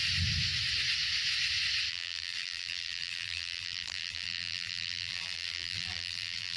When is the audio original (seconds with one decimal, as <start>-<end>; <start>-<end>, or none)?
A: 0.0-1.9